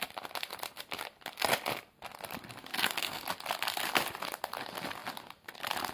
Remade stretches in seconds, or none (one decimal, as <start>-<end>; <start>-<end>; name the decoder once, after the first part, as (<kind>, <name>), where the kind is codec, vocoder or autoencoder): 2.7-3.2 (codec, SNAC)